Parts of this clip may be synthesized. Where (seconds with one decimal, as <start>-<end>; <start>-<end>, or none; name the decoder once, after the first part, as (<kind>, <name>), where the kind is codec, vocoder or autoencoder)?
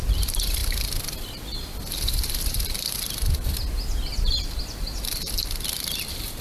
none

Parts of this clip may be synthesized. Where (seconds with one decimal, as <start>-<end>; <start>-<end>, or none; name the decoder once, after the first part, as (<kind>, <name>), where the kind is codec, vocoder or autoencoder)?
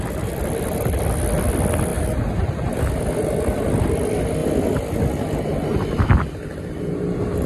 none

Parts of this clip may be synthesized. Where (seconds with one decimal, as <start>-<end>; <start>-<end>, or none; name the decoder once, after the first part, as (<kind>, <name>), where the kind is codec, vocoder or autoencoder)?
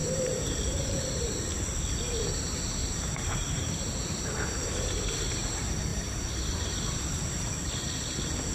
0.0-1.3 (vocoder, BigVGAN v2); 2.8-4.4; 5.9-7.5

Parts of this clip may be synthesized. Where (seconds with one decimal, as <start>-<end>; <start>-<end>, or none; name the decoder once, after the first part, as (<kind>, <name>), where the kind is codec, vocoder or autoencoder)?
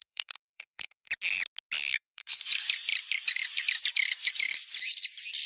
0.0-1.1 (codec, SNAC); 1.9-2.4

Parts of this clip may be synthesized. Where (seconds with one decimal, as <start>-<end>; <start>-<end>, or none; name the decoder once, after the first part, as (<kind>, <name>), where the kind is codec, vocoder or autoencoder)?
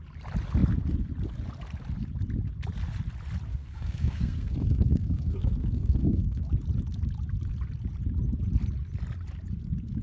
3.5-6.5 (codec, SNAC)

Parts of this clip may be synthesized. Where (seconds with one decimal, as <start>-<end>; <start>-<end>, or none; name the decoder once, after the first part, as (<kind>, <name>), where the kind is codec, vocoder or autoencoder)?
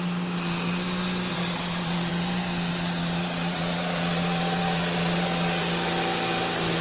1.3-2.1 (vocoder, Vocos); 2.7-5.6